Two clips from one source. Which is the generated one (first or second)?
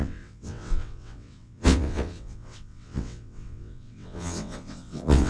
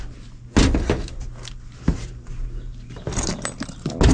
first